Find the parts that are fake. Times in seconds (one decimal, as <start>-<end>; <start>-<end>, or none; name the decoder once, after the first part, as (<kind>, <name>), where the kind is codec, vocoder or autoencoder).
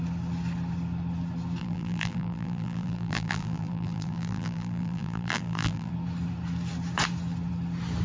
1.6-5.9 (vocoder, BigVGAN v2)